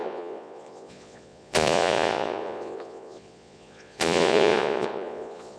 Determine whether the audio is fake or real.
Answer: fake